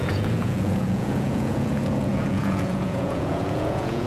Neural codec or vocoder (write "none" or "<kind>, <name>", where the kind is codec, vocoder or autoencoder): vocoder, Vocos